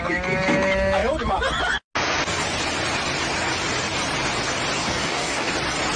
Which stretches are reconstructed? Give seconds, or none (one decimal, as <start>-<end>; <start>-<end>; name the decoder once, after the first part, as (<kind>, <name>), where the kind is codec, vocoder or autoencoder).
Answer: 4.8-5.5 (codec, DAC)